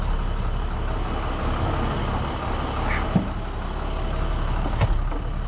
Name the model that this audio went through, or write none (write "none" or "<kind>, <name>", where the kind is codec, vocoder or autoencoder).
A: none